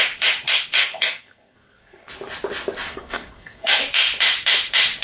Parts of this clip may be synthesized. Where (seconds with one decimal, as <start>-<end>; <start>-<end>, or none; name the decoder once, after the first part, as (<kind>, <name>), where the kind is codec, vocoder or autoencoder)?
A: 0.8-2.1 (codec, SNAC); 2.9-3.8